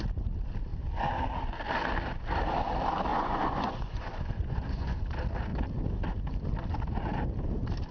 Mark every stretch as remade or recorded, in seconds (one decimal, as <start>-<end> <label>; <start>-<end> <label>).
0.0-3.1 recorded; 3.1-5.0 remade; 5.0-7.9 recorded